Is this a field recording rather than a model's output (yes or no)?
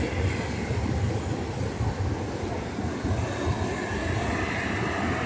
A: yes